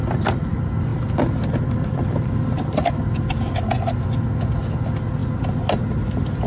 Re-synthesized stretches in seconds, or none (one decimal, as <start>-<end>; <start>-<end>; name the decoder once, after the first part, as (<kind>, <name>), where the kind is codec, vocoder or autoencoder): 0.0-0.5 (vocoder, BigVGAN v2); 0.9-3.3